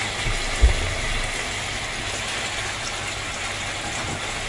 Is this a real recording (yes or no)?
yes